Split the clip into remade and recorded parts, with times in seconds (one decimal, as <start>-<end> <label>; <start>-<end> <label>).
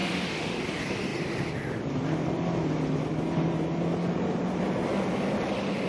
0.0-0.6 remade; 0.6-5.9 recorded